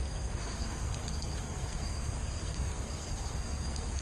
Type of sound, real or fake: fake